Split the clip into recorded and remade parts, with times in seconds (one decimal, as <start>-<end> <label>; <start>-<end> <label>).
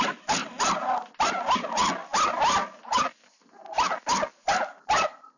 0.0-5.4 recorded